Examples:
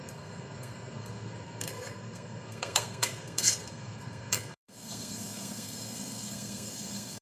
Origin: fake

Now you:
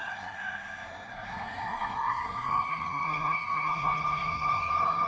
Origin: fake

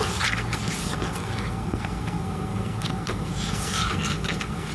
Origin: fake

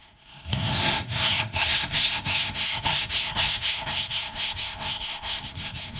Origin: fake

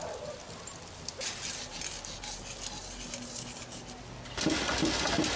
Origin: real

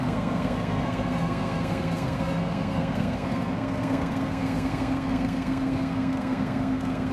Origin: fake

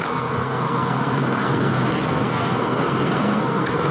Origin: fake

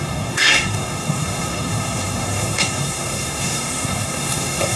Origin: fake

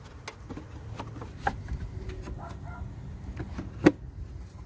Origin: real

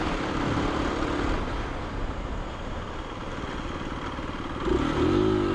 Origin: real